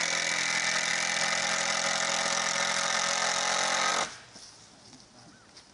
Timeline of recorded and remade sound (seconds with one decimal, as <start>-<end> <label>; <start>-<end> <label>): 0.0-5.7 recorded